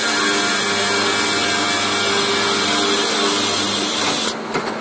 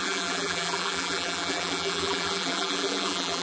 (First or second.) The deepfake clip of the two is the second